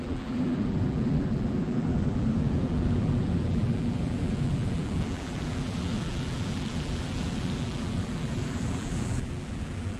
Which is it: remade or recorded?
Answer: remade